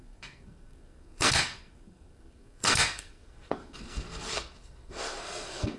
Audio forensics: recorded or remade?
remade